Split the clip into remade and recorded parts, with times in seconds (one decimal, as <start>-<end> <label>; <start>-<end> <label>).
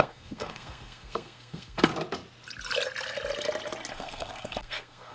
0.0-1.9 remade; 1.9-3.9 recorded; 3.9-5.1 remade